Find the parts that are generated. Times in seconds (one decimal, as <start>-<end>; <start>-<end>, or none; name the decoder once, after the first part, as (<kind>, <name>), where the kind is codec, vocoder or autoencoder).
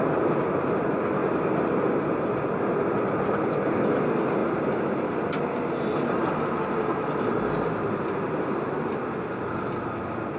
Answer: none